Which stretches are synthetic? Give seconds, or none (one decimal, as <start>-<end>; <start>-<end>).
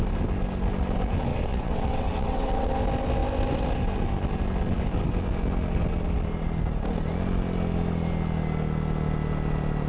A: 1.3-2.7